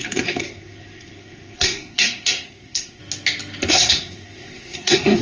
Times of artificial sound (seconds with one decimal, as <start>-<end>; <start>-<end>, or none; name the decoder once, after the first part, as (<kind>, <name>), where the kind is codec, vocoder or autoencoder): 0.0-3.0 (codec, SNAC); 3.7-5.2